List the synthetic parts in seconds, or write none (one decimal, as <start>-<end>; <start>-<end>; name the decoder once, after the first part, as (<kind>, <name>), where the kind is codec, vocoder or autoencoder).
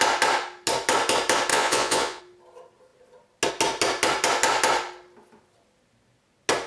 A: 1.5-2.2 (vocoder, Vocos)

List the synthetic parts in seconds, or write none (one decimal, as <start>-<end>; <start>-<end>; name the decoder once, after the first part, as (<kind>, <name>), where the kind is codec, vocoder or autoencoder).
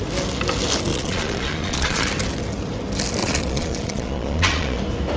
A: 0.9-2.1 (vocoder, Vocos); 3.2-4.8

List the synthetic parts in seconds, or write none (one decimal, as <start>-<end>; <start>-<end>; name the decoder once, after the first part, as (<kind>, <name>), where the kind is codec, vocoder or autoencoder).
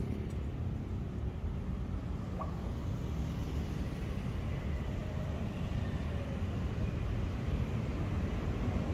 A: none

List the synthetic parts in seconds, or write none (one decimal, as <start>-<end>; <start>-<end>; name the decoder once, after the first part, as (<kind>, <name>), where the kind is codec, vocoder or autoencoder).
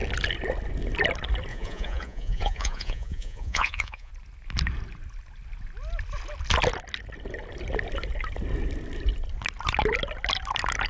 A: 1.5-4.1 (vocoder, Vocos)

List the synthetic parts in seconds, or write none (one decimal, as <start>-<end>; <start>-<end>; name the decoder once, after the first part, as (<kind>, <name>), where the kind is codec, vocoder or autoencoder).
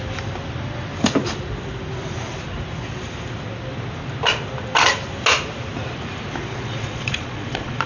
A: 6.4-7.9 (vocoder, Vocos)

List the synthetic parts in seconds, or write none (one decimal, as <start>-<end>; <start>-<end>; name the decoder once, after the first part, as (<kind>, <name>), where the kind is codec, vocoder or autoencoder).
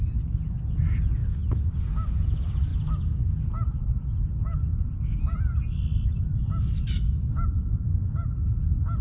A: none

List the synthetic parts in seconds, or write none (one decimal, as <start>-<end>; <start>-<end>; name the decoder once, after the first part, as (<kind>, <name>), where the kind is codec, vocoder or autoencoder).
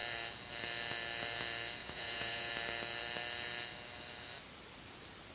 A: 1.8-2.5 (vocoder, Vocos)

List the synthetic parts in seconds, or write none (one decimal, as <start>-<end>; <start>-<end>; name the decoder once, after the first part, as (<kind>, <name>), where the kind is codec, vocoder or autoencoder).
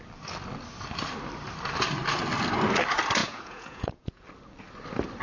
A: 3.2-4.2 (vocoder, Vocos)